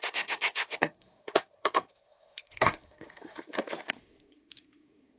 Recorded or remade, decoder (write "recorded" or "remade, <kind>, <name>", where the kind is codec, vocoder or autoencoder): remade, codec, SNAC